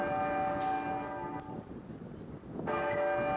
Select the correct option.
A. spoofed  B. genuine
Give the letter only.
B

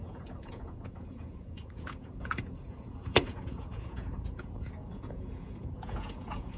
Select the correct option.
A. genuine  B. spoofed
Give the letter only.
B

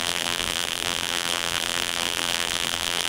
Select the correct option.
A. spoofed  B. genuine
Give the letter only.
A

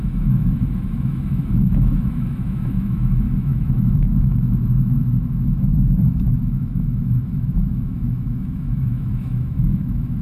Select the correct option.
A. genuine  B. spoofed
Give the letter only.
B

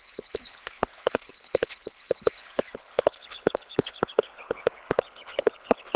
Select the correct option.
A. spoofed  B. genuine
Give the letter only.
A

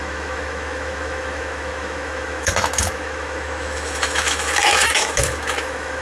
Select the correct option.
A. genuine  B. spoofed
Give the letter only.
B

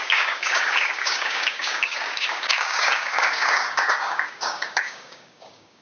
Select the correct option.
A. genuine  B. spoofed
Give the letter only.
B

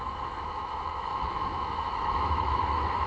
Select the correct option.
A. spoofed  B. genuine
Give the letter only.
A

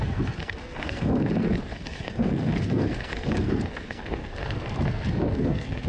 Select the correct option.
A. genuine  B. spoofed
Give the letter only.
B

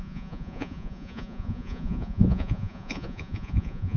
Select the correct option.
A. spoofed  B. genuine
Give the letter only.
A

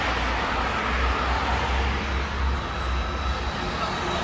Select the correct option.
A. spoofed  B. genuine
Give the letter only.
B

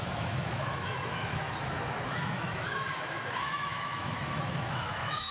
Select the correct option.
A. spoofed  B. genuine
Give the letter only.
A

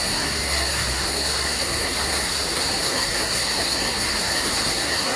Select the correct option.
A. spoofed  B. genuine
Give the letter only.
A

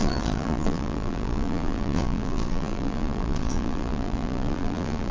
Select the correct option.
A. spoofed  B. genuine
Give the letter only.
A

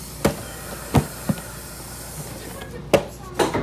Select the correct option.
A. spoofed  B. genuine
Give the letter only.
B